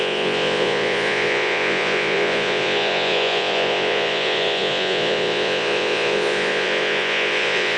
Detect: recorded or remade remade